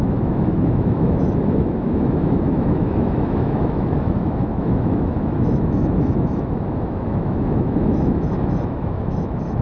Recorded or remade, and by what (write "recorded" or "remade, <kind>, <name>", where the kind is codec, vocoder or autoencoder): remade, autoencoder, DAC-VAE